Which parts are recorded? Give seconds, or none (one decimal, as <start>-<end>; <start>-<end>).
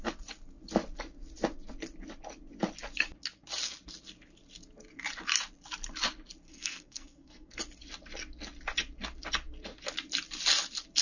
0.0-6.5; 7.6-11.0